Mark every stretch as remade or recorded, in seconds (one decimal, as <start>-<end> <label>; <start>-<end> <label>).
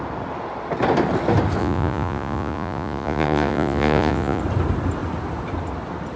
0.0-1.6 recorded; 1.6-4.4 remade; 4.4-6.2 recorded